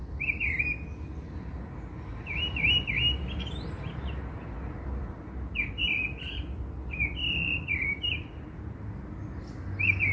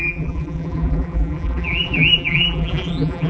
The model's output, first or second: second